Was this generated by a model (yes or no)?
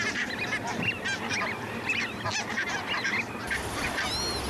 no